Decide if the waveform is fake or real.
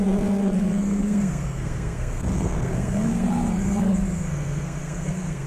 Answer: fake